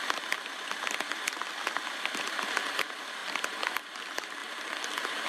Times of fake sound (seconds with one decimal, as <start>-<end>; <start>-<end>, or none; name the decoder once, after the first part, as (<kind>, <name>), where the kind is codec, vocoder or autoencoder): none